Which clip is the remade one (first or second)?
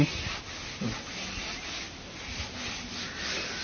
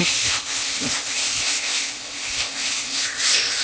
second